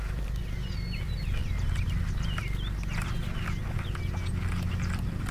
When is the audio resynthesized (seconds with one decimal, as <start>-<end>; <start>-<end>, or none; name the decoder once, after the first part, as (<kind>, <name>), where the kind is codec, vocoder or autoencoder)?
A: none

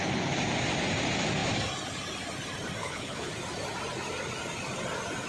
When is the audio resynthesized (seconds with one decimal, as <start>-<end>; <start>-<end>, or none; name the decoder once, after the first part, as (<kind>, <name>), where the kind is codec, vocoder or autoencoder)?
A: 2.8-3.3 (codec, HILCodec)

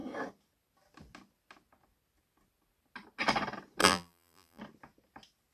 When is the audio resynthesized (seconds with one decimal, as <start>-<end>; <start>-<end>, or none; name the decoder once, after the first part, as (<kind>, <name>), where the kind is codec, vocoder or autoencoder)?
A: 3.8-4.6 (vocoder, BigVGAN v2)

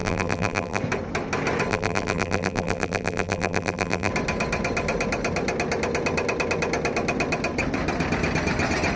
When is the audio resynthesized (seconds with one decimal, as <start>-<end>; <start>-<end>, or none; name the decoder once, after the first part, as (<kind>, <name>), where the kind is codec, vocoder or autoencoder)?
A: 0.0-0.8 (vocoder, BigVGAN v2); 1.7-4.1

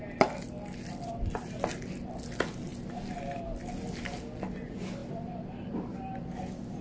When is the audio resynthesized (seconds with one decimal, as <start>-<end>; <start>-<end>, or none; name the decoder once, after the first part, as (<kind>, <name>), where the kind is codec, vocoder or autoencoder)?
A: none

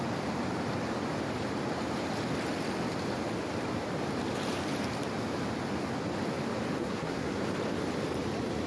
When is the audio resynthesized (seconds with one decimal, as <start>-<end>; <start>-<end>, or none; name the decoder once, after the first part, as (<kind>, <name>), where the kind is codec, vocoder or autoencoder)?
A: 6.8-7.4 (codec, SNAC)

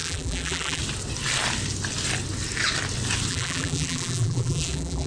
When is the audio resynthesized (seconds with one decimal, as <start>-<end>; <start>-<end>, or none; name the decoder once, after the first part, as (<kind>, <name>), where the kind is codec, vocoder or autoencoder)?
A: 0.0-0.8 (vocoder, BigVGAN v2); 3.3-5.1